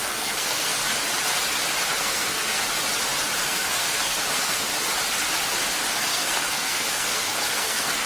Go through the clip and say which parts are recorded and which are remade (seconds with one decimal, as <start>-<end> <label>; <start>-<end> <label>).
0.0-0.8 remade; 0.8-2.0 recorded; 2.0-2.7 remade; 2.7-3.4 recorded; 3.4-4.7 remade; 4.7-5.9 recorded; 5.9-8.1 remade